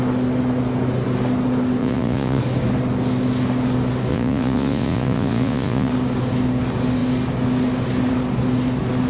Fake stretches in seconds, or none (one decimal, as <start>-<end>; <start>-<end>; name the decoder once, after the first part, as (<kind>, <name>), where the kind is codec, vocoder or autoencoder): 1.8-2.4 (vocoder, Vocos); 4.1-5.9